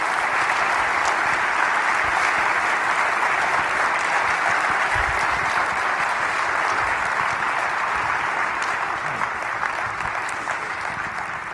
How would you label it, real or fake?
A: real